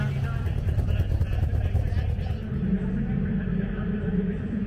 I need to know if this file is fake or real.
real